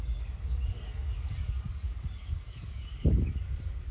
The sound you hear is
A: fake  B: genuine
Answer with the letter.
A